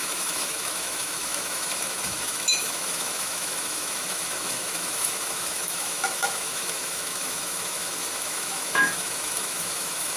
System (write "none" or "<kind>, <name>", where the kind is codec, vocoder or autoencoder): autoencoder, DAC-VAE